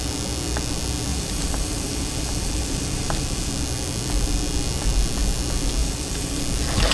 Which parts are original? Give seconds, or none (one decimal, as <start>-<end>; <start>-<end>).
0.0-1.1; 3.5-5.8; 6.4-6.9

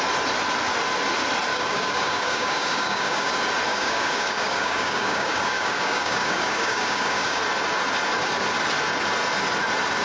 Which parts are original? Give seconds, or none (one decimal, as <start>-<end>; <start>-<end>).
0.0-1.5; 3.3-3.7; 7.4-10.0

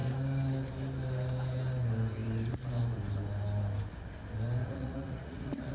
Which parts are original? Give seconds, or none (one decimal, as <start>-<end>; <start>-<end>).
0.0-4.6